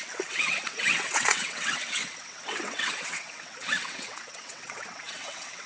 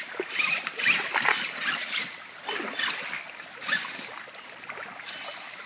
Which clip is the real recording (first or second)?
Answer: second